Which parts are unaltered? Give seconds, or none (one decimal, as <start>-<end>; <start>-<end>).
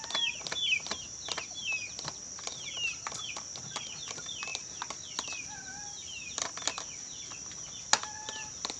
0.0-4.5; 6.4-8.8